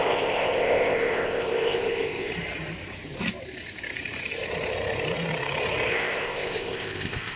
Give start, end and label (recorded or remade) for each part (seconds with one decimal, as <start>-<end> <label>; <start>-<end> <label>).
0.0-2.3 remade; 2.3-5.9 recorded; 5.9-7.4 remade